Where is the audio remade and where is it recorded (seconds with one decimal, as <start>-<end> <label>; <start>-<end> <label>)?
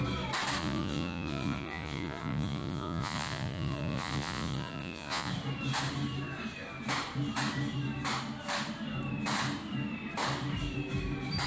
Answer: 0.0-0.6 recorded; 0.6-5.3 remade; 5.3-11.5 recorded